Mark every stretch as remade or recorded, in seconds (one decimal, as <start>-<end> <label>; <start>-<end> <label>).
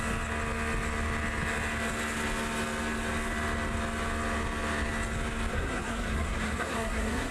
0.0-5.5 recorded; 5.5-7.3 remade